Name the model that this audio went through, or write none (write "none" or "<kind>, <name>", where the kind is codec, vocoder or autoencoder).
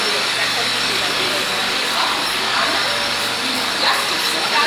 codec, DAC